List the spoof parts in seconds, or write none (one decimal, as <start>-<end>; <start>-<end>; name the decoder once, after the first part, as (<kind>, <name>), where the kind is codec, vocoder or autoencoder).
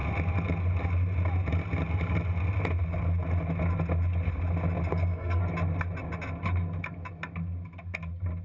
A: 4.9-5.4 (codec, SNAC)